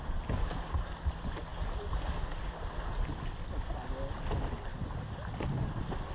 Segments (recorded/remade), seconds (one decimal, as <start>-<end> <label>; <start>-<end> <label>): 0.0-6.1 recorded